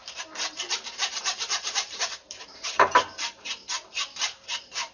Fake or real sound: fake